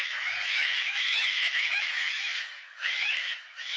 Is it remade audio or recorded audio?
remade